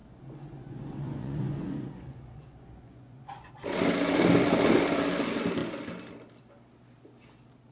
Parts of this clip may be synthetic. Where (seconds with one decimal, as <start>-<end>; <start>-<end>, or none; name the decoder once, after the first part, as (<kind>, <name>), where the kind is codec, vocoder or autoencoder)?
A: 0.0-3.5 (vocoder, Vocos)